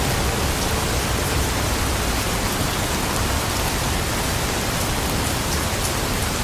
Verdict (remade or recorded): recorded